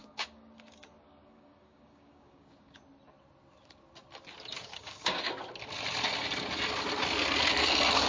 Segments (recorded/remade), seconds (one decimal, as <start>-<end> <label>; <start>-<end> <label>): 0.0-2.8 remade; 2.8-4.7 recorded; 4.7-5.3 remade; 5.3-8.1 recorded